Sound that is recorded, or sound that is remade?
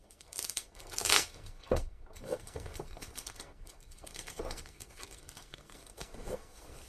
remade